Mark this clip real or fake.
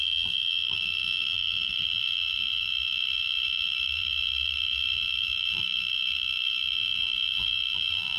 fake